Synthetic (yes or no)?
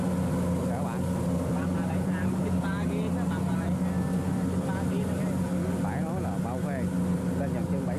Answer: no